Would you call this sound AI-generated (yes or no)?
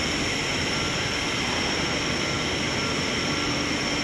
yes